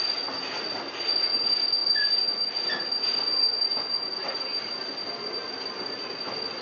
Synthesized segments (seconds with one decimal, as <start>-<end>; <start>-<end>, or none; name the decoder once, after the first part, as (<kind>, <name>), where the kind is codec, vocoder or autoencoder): none